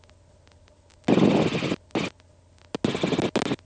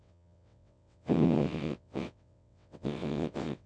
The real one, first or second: first